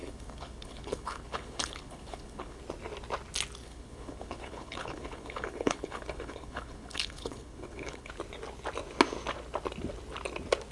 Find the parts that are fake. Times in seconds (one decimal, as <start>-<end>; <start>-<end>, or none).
0.0-2.6; 3.6-8.1